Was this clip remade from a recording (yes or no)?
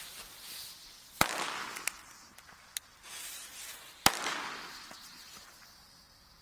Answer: no